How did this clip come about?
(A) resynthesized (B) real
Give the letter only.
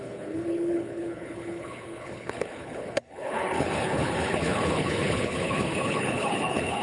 A